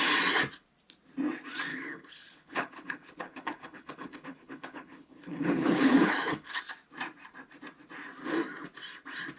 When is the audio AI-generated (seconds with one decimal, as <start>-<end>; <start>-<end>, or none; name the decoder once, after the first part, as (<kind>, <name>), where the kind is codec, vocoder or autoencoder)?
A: 1.7-6.6 (codec, HILCodec)